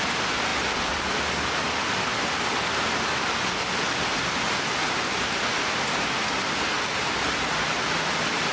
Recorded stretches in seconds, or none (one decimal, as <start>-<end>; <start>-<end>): 0.0-8.5